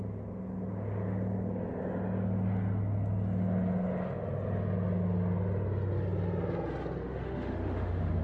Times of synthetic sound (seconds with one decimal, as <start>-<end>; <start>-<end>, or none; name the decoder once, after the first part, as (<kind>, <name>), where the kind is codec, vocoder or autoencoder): 7.0-8.2 (autoencoder, DAC-VAE)